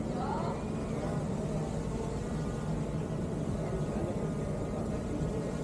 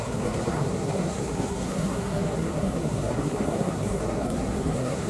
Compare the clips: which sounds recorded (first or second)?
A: first